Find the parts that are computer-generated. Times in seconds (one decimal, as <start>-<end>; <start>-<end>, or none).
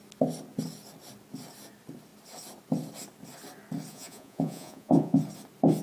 3.9-5.2